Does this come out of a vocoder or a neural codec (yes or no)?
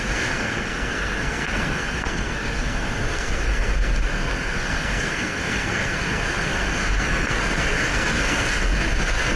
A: yes